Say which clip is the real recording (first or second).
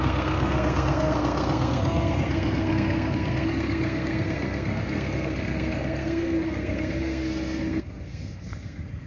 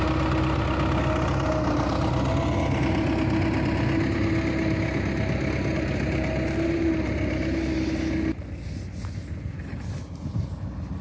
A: second